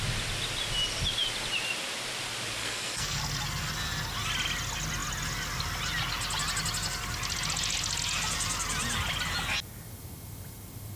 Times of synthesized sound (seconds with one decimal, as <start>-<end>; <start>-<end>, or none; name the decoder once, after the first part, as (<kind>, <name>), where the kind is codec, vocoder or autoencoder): 2.6-3.2 (codec, SNAC)